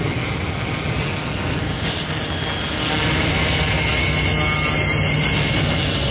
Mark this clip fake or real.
real